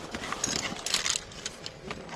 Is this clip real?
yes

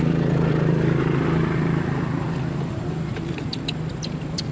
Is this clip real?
no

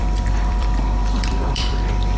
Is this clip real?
no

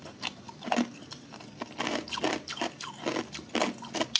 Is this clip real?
yes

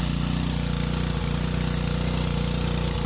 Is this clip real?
yes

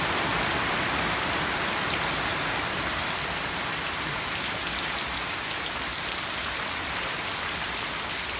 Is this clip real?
no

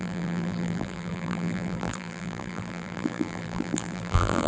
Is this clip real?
no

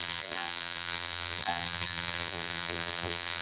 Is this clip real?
no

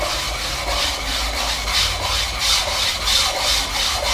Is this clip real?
yes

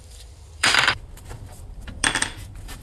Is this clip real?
no